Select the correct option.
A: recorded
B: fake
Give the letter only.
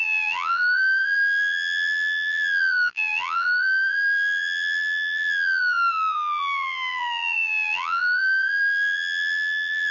B